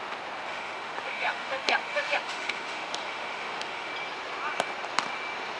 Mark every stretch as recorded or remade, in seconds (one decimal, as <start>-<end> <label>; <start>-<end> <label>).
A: 0.0-0.5 recorded; 0.5-3.9 remade; 3.9-5.6 recorded